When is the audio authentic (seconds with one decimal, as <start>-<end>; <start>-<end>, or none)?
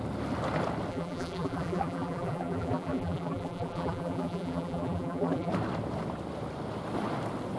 0.0-0.9; 5.5-7.6